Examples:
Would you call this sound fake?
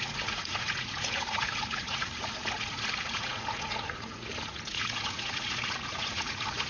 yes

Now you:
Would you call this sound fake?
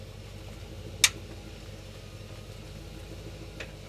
no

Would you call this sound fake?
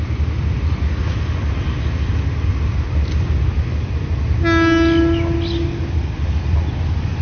no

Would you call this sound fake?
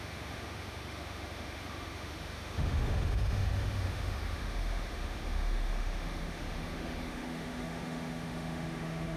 yes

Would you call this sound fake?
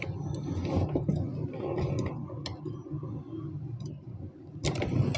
no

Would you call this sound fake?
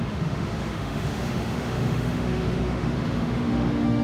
yes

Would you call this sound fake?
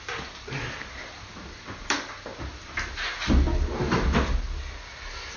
no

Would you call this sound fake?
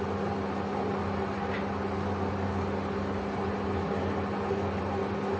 no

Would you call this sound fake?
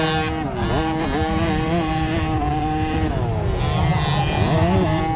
no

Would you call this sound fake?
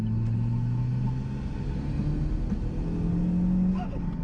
no